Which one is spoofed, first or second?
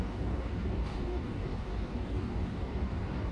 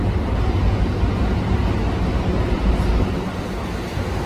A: first